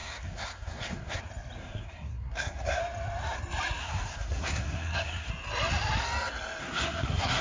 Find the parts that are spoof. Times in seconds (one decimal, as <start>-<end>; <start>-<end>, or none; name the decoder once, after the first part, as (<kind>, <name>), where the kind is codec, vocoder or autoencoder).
0.0-1.2 (codec, SNAC); 1.6-2.8; 3.8-5.3; 6.6-7.4